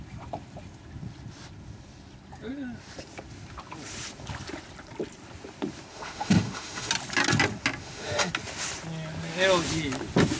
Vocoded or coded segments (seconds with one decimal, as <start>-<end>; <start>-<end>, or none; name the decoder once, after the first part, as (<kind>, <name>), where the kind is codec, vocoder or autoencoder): 5.9-6.9 (autoencoder, DAC-VAE); 7.8-8.3